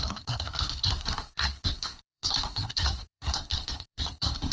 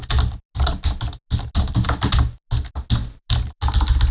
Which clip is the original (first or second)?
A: second